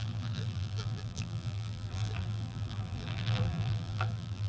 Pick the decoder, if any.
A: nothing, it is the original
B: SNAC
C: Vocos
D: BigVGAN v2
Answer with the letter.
D